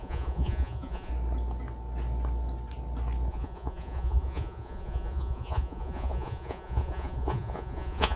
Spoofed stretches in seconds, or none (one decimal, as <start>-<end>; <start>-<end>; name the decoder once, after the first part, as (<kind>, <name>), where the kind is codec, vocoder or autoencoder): 0.0-1.1 (vocoder, Vocos); 3.3-8.2